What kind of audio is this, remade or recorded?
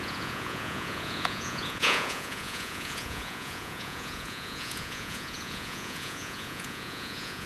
remade